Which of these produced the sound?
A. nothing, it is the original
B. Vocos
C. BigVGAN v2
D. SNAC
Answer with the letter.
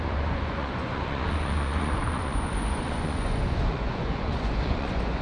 B